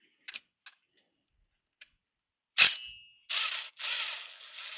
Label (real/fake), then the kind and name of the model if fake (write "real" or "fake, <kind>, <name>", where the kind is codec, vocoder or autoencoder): real